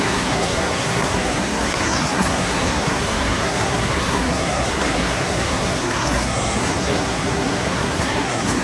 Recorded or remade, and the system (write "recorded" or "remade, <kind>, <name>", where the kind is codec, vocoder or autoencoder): remade, codec, SNAC